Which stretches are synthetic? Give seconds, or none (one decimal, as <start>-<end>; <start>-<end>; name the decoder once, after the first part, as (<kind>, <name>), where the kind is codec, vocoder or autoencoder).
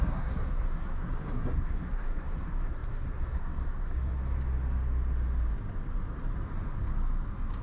0.0-4.2 (codec, SNAC)